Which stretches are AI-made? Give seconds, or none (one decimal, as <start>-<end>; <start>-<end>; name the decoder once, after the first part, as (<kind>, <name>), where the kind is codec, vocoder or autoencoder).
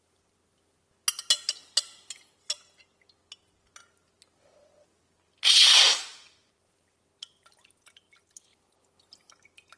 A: none